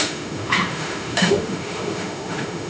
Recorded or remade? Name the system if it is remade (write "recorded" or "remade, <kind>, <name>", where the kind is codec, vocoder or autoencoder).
remade, autoencoder, DAC-VAE